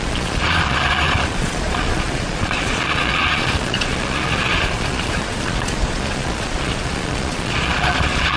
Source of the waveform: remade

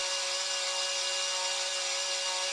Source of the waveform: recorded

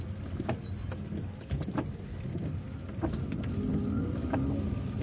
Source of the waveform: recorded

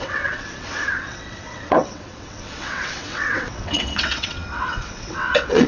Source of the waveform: remade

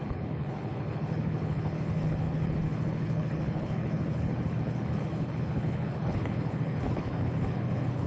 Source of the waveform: remade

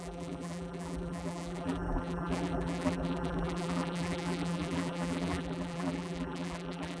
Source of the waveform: remade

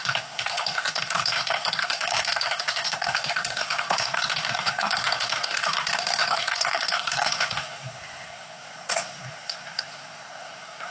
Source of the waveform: remade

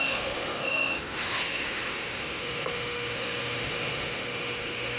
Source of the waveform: remade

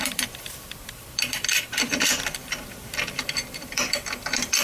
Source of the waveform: remade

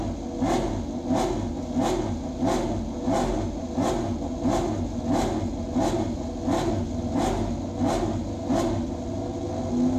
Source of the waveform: recorded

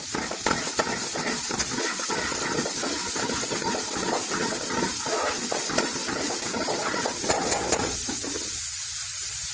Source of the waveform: remade